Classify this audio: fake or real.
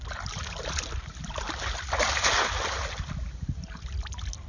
real